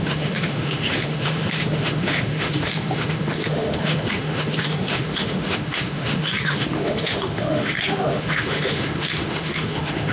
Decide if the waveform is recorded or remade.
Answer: remade